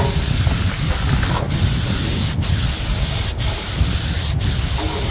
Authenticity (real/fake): real